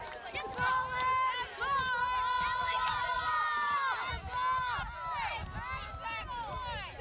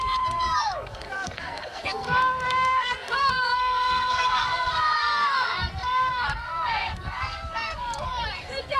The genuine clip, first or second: first